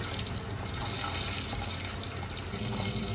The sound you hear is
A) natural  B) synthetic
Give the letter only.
A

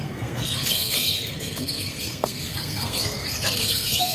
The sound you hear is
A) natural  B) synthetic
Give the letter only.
B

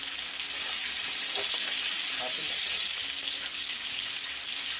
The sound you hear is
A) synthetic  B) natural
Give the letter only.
B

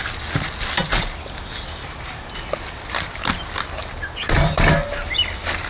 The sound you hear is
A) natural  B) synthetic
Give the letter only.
A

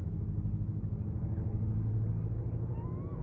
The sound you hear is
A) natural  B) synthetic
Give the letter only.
A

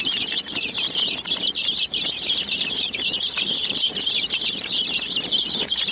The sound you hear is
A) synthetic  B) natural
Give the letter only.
A